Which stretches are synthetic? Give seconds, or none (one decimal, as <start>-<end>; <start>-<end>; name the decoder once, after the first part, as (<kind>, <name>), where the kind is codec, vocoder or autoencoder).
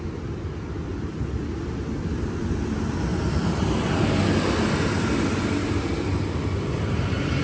0.9-2.0 (vocoder, BigVGAN v2); 3.1-3.9